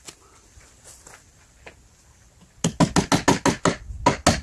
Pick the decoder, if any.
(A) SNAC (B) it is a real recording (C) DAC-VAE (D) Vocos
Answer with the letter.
B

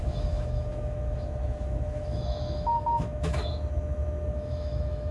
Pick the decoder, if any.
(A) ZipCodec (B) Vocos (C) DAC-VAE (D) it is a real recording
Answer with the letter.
C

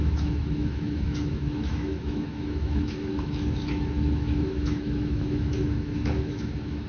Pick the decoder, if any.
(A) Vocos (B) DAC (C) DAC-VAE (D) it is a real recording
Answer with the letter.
C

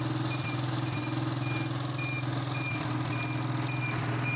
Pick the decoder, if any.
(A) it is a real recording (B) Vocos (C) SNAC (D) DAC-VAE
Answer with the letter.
A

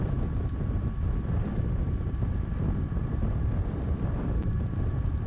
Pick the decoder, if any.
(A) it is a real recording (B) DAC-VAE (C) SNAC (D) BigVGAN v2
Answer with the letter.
A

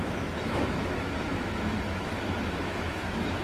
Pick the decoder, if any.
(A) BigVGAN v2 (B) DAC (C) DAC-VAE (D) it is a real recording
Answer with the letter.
C